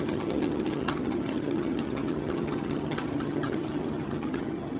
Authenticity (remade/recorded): remade